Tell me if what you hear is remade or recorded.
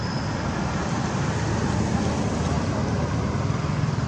recorded